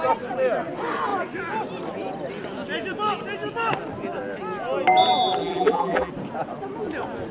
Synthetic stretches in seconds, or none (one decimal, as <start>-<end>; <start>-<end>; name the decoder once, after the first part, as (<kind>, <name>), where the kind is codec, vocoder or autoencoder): 5.4-6.1 (vocoder, BigVGAN v2)